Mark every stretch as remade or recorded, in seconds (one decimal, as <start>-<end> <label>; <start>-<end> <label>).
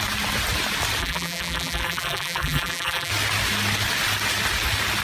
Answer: 0.0-1.0 recorded; 1.0-3.1 remade; 3.1-5.0 recorded